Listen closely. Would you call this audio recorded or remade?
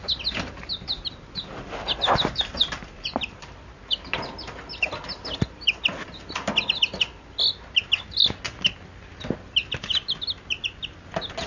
recorded